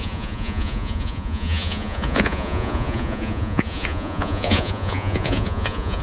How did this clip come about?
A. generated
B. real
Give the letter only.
A